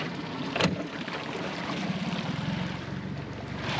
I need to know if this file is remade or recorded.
recorded